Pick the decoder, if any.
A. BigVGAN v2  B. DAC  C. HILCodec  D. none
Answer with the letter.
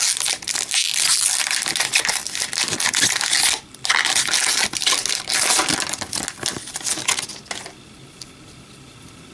D